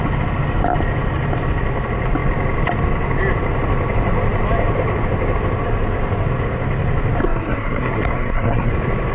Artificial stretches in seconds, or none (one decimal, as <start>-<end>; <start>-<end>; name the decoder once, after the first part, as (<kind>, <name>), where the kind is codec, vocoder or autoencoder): 7.2-8.7 (codec, SNAC)